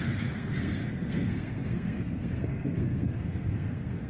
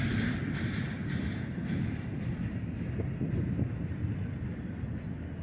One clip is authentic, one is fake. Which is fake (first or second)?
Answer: first